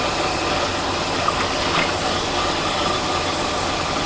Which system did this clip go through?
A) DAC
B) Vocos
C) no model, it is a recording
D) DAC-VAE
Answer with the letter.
C